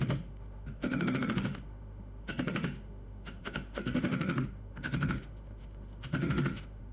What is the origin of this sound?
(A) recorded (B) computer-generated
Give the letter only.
B